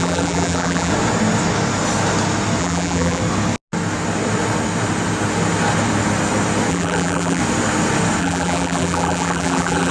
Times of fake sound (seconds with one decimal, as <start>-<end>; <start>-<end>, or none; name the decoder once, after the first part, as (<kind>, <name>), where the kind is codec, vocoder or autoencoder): 0.0-0.9 (vocoder, BigVGAN v2); 2.6-3.2; 6.7-7.4; 8.2-9.9